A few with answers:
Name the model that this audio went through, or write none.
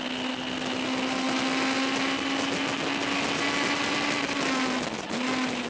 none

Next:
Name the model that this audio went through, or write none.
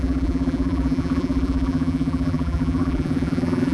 vocoder, BigVGAN v2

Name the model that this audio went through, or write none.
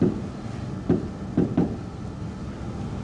none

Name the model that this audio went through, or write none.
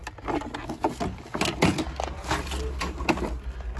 none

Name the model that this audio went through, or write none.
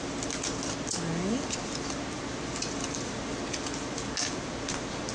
none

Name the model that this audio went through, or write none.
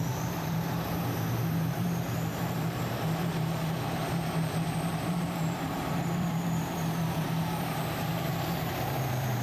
vocoder, BigVGAN v2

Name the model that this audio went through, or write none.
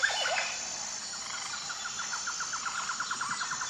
none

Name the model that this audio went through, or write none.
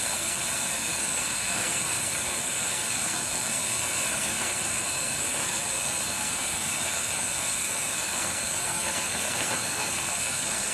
codec, SNAC